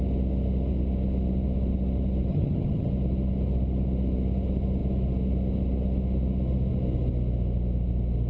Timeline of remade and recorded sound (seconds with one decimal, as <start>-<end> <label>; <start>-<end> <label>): 0.0-2.3 recorded; 2.3-2.9 remade; 2.9-8.3 recorded